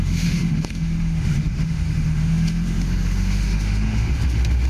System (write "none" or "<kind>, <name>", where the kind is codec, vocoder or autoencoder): autoencoder, DAC-VAE